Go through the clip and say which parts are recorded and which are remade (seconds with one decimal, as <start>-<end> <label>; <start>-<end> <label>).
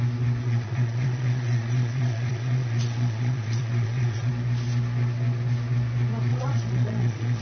0.0-0.4 recorded; 0.4-4.3 remade; 4.3-6.3 recorded; 6.3-7.4 remade